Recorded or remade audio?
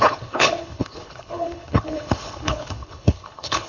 remade